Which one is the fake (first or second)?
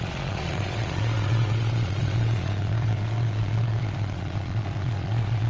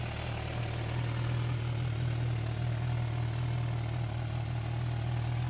first